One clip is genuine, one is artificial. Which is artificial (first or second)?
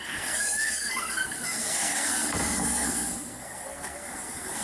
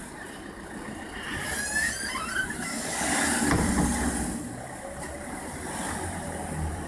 first